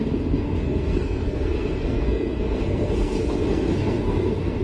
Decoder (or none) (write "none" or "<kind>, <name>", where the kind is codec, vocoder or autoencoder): codec, SNAC